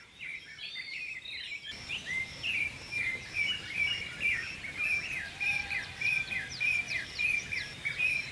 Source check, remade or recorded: remade